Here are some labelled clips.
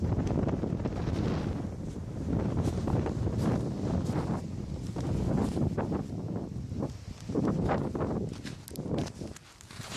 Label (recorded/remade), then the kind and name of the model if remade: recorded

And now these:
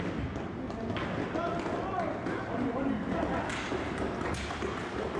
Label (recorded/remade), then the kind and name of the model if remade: recorded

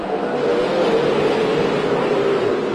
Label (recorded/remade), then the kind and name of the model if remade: recorded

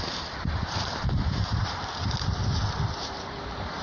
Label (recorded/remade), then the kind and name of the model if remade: remade, vocoder, BigVGAN v2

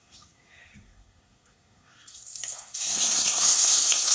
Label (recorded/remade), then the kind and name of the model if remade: remade, codec, SNAC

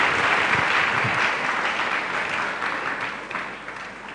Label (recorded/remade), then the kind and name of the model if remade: recorded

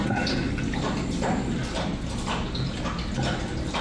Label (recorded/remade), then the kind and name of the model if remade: recorded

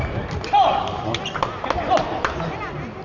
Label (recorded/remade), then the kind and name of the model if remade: recorded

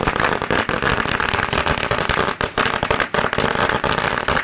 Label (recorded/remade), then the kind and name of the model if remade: remade, vocoder, BigVGAN v2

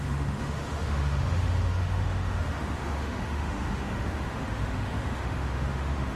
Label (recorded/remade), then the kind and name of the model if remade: remade, autoencoder, DAC-VAE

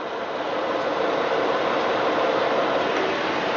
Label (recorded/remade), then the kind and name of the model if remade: recorded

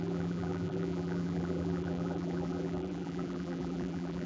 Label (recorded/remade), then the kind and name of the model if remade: remade, vocoder, BigVGAN v2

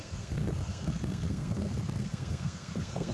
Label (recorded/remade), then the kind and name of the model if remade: remade, codec, SNAC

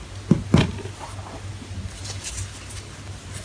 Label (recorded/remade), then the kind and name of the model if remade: recorded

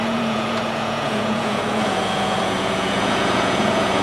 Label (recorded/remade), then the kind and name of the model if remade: remade, vocoder, Vocos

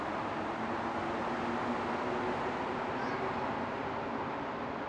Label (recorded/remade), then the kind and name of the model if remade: recorded